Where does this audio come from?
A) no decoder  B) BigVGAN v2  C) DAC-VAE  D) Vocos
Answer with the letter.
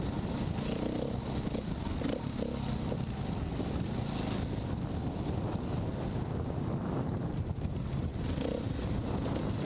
A